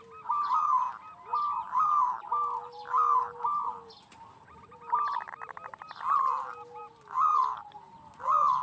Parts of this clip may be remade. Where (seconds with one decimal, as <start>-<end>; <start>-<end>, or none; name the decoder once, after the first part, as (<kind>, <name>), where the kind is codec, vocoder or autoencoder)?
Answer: none